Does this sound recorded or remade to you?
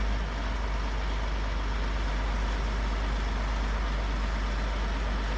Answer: recorded